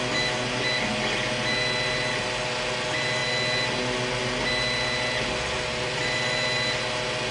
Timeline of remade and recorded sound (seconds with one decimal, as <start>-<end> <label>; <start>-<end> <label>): 0.0-7.3 recorded